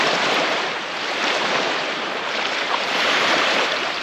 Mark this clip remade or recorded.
remade